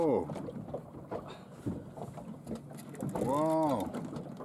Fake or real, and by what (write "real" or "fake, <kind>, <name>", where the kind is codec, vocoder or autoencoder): real